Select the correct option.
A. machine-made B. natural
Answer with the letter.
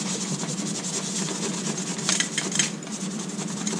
B